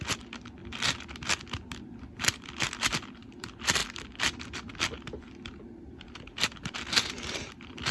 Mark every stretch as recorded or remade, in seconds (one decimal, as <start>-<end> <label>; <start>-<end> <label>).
0.0-0.6 remade; 0.6-1.8 recorded; 1.8-7.9 remade